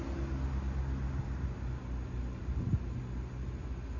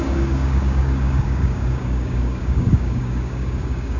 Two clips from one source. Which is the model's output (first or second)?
second